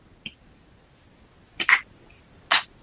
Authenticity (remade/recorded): recorded